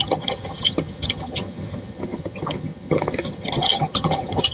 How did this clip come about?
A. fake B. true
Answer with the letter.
A